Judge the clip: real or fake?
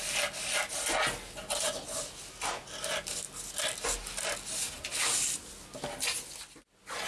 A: real